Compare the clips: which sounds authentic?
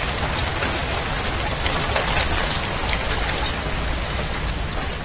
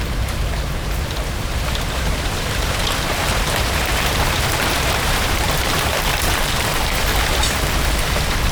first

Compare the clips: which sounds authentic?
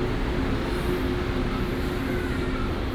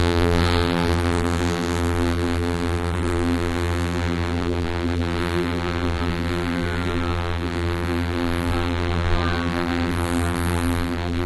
first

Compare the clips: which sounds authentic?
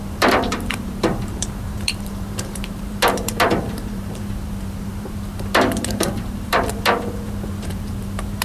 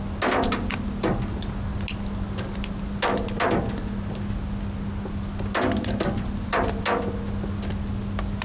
second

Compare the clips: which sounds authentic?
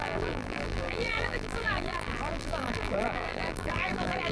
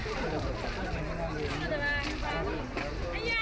second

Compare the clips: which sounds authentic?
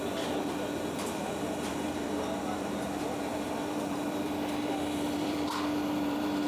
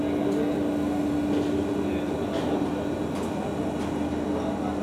second